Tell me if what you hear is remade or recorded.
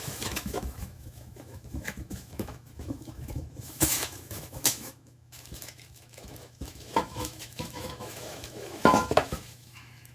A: remade